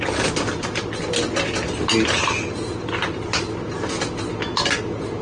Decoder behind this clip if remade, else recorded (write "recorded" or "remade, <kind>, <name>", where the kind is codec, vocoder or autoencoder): recorded